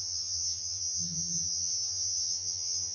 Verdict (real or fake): fake